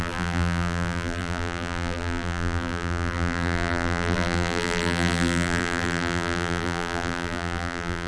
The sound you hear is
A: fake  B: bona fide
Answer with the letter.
A